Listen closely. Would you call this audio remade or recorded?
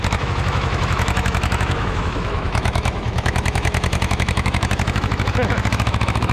remade